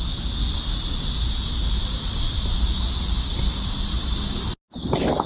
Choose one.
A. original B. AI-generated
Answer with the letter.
A